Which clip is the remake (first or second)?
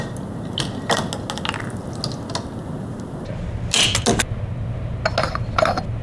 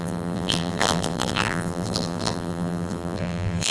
second